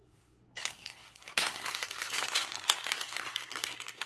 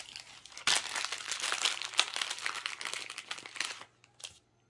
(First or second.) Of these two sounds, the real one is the second